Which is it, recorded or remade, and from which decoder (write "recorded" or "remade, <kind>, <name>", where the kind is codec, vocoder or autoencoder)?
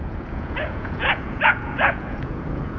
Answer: remade, vocoder, Vocos